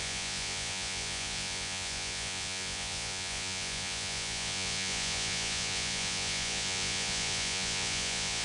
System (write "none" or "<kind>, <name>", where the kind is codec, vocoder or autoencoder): vocoder, Vocos